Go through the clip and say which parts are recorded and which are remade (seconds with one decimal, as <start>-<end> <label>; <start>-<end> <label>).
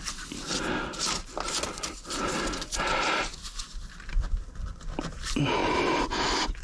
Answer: 0.0-6.6 recorded